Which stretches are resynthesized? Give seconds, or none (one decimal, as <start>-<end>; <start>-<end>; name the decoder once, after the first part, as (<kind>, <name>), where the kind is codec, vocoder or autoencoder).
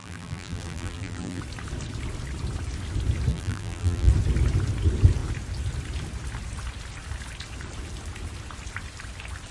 0.0-1.4 (vocoder, BigVGAN v2); 3.3-4.1